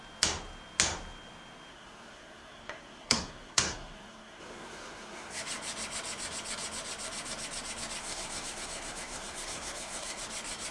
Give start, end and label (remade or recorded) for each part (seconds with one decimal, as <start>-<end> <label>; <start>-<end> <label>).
0.0-1.7 recorded; 1.7-5.4 remade; 5.4-8.0 recorded; 8.0-10.2 remade; 10.2-10.7 recorded